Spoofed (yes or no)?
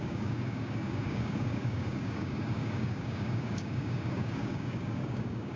yes